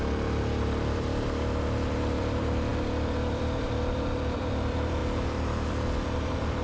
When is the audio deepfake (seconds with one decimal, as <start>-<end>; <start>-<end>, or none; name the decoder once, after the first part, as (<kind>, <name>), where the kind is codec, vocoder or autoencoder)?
0.0-5.0 (vocoder, BigVGAN v2); 5.7-6.6